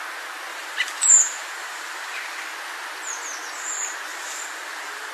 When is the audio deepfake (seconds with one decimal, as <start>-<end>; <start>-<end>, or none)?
0.5-2.2; 4.1-5.1